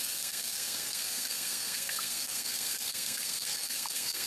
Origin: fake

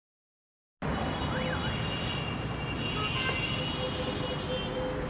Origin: real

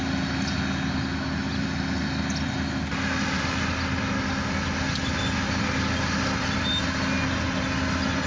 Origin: real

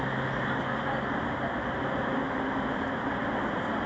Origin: real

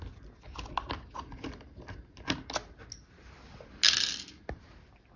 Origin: real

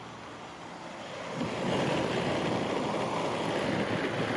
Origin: real